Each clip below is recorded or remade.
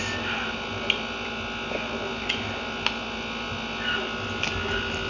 recorded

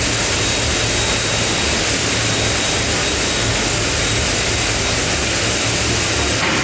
recorded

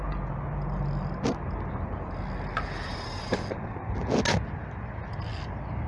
recorded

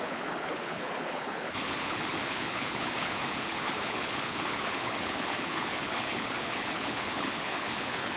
remade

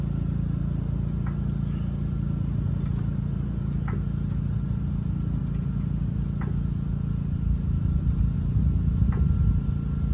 recorded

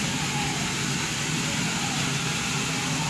recorded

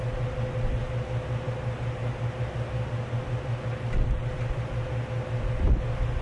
recorded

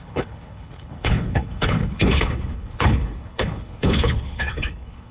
remade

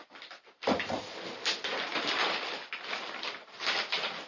recorded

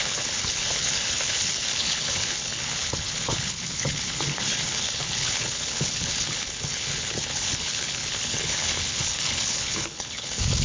remade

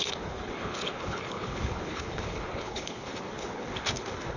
remade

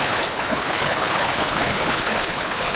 remade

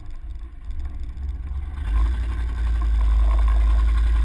recorded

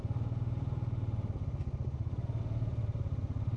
recorded